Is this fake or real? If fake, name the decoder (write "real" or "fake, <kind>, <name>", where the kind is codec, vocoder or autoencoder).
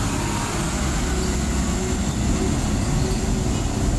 real